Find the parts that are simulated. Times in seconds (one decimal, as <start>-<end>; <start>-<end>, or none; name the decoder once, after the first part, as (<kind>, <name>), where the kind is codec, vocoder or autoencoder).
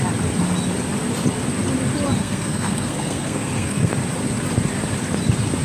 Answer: 2.2-3.9 (codec, SNAC)